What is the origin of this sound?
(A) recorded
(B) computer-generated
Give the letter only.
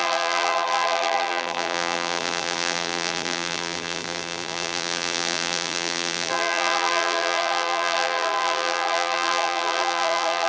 B